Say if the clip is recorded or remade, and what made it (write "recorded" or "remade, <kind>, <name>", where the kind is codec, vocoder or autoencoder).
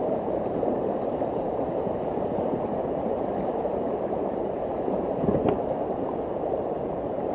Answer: remade, vocoder, BigVGAN v2